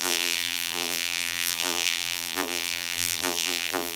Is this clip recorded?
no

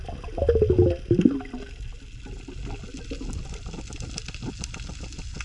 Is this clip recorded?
yes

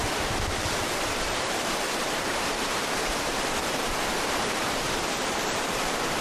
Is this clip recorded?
no